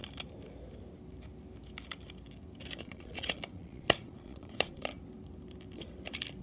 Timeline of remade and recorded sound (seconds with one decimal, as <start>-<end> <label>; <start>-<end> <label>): 0.0-2.8 recorded; 2.8-4.9 remade; 4.9-6.4 recorded